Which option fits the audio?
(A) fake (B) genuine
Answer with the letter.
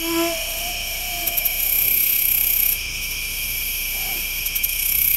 A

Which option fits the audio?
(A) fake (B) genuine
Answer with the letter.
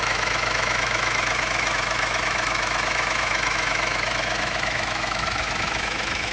A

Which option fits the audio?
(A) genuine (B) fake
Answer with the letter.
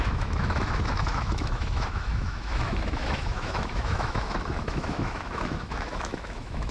B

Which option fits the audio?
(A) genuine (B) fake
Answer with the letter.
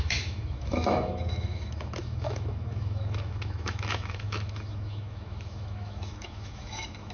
B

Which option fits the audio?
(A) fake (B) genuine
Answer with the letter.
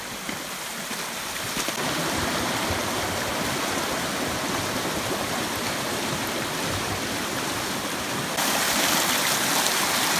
B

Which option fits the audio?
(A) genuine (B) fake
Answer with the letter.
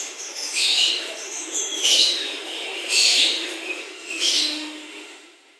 B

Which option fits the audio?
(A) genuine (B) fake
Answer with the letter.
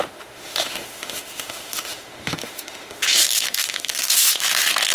B